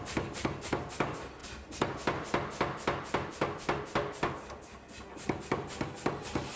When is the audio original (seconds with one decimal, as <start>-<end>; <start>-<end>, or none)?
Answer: 0.0-6.6